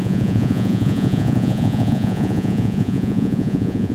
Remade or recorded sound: remade